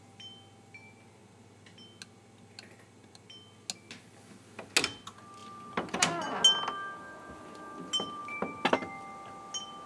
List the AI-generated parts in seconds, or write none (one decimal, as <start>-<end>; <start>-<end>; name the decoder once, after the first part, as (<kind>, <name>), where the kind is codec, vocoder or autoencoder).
none